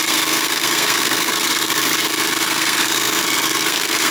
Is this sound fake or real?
fake